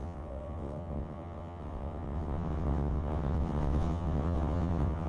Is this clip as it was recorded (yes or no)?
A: no